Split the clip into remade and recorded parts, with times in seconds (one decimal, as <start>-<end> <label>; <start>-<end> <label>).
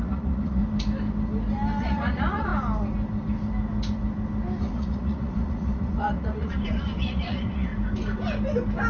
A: 0.0-0.6 remade; 0.6-1.8 recorded; 1.8-2.5 remade; 2.5-4.6 recorded; 4.6-7.7 remade; 7.7-8.9 recorded